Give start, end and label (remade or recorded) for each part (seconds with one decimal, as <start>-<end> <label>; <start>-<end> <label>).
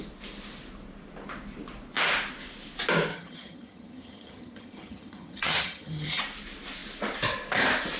0.0-3.1 recorded; 3.1-6.2 remade; 6.2-8.0 recorded